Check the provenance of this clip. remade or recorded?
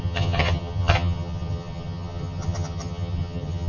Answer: remade